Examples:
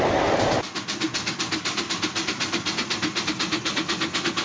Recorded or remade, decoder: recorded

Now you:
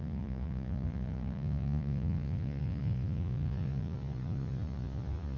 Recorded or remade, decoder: remade, vocoder, Vocos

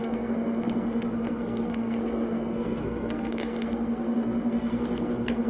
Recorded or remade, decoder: remade, codec, SNAC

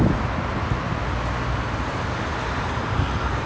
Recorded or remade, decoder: recorded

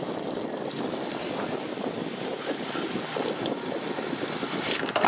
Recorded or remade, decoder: remade, vocoder, BigVGAN v2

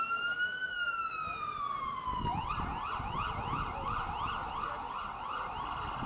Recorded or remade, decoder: recorded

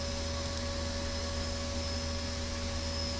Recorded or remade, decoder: recorded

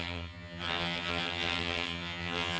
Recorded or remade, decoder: remade, vocoder, HiFi-GAN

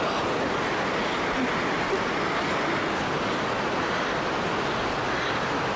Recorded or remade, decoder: recorded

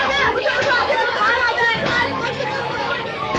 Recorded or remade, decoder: remade, codec, DAC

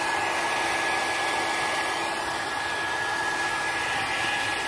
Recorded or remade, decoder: recorded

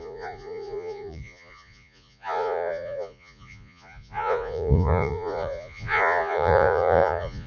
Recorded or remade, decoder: remade, vocoder, Vocos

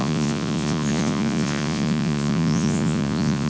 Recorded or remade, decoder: remade, vocoder, Vocos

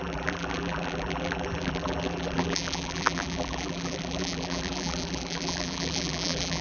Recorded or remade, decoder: remade, vocoder, BigVGAN v2